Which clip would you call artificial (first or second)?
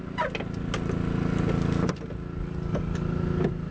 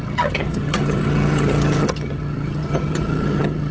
second